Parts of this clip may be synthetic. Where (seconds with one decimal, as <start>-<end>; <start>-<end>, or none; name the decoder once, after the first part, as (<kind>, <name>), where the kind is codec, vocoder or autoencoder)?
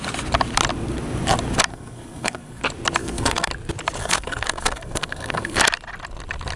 1.7-2.6 (codec, SNAC); 3.0-3.5; 4.0-5.6